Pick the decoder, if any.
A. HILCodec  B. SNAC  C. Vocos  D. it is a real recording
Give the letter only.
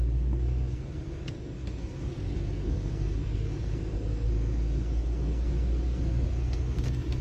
B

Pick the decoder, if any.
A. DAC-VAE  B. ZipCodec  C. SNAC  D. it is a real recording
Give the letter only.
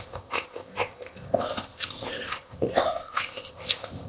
B